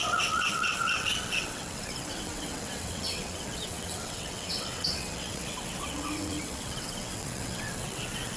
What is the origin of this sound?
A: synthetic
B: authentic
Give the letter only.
A